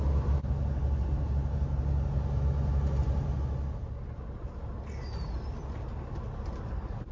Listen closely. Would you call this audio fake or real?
real